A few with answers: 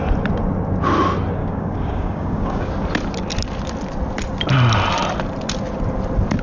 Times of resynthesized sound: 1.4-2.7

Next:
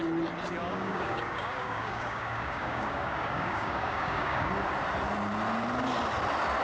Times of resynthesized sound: 0.6-4.5